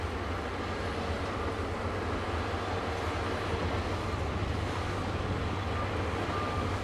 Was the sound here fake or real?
real